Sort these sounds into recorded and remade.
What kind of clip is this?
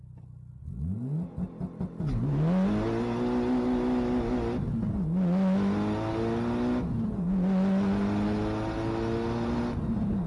recorded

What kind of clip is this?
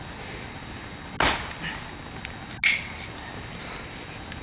recorded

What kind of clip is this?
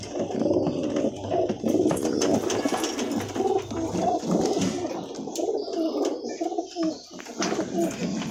recorded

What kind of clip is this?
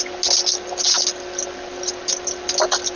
recorded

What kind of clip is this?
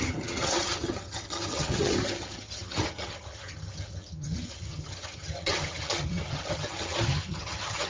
remade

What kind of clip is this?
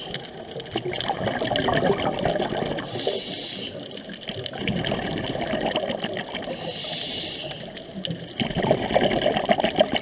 recorded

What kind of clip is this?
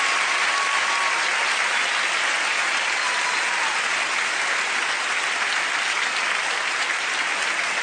recorded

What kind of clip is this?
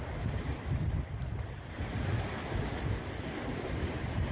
remade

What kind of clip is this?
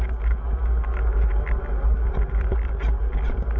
recorded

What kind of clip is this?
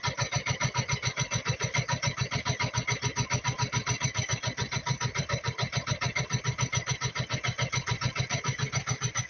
remade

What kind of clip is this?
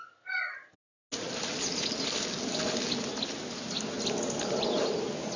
recorded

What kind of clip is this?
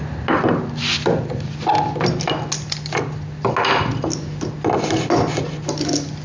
recorded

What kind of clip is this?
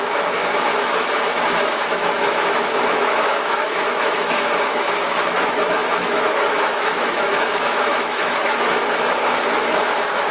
remade